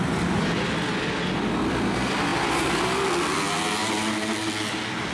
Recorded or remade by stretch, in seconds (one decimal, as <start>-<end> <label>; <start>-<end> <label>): 0.0-5.1 recorded